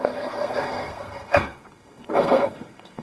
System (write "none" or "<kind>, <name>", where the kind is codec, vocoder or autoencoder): codec, SNAC